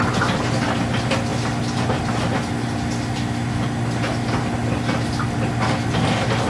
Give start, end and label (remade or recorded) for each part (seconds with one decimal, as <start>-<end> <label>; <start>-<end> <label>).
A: 0.0-6.5 recorded